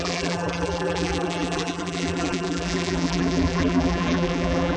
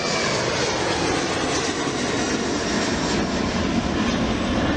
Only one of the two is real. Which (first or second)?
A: second